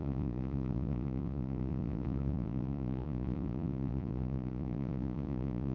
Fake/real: fake